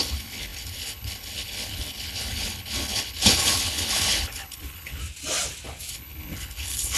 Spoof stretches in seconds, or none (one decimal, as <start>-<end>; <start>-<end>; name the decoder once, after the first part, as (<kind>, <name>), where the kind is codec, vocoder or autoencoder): 0.0-5.0 (codec, HILCodec); 5.9-7.0